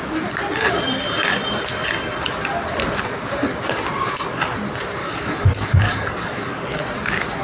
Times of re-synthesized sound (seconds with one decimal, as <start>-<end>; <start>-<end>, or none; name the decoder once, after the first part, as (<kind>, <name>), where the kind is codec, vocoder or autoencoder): 5.0-6.8 (codec, DAC)